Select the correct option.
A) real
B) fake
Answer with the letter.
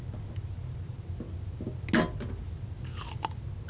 A